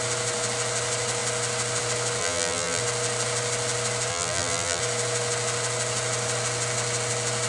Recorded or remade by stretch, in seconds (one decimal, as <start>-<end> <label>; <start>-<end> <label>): 0.0-2.2 recorded; 2.2-2.8 remade; 2.8-4.1 recorded; 4.1-4.8 remade; 4.8-7.5 recorded